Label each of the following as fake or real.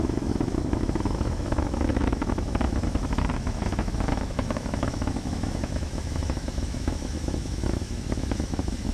fake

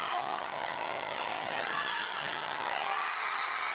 fake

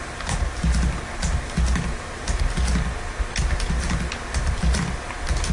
real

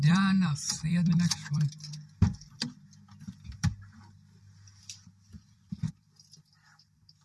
fake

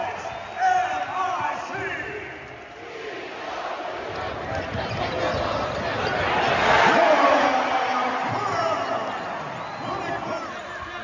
real